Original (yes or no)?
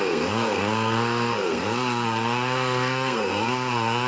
no